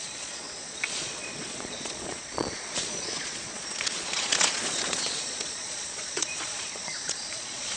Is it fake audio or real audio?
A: fake